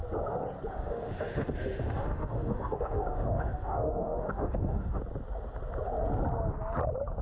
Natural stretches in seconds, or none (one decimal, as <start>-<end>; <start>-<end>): 0.0-0.7; 5.0-7.2